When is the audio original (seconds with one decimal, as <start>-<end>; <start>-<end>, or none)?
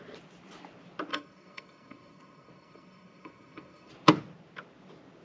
0.0-1.1; 3.9-5.2